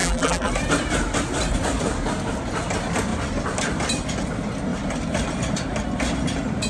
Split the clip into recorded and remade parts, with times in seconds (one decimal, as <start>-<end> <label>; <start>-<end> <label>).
0.0-0.5 remade; 0.5-6.7 recorded